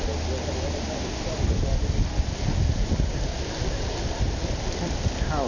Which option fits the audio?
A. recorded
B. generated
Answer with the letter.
A